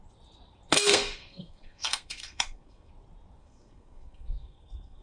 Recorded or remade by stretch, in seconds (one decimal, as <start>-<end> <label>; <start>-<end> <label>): 0.0-0.7 recorded; 0.7-2.9 remade; 2.9-3.4 recorded; 3.4-5.0 remade